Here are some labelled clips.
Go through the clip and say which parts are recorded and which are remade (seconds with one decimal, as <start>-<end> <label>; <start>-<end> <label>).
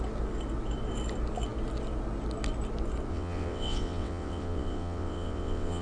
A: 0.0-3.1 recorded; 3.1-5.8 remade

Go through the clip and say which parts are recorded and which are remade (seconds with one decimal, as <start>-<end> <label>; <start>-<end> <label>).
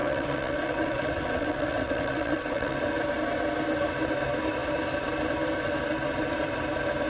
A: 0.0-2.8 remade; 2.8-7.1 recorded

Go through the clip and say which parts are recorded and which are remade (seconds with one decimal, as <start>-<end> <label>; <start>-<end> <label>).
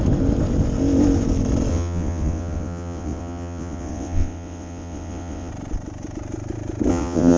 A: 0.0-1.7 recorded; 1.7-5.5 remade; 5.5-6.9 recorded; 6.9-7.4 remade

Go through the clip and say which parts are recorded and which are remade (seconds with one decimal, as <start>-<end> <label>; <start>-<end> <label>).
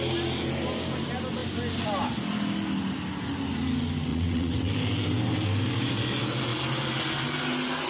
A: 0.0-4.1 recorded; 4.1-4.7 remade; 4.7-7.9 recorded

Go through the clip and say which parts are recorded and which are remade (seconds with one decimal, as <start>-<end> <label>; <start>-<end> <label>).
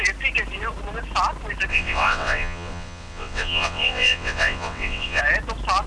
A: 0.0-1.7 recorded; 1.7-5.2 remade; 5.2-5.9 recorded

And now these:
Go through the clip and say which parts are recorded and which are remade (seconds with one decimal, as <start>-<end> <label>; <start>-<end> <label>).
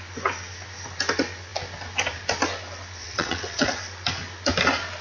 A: 0.0-3.0 recorded; 3.0-3.8 remade; 3.8-5.0 recorded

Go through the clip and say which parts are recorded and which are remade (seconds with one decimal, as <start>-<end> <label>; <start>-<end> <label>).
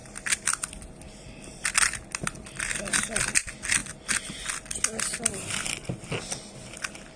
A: 0.0-7.2 recorded